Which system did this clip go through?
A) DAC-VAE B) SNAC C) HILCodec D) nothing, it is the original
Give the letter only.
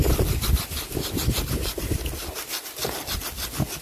D